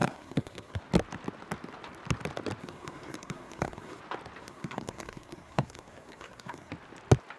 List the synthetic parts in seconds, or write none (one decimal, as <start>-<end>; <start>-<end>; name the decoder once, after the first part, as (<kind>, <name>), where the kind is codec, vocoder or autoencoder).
0.0-0.8 (codec, SNAC); 2.6-4.0; 4.4-6.7